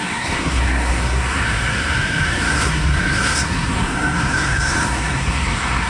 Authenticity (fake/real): fake